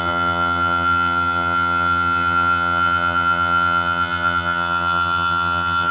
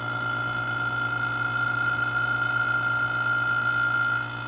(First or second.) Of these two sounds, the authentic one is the second